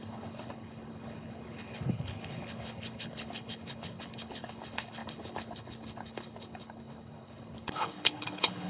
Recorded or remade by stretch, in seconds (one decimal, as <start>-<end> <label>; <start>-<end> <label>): 0.0-8.7 remade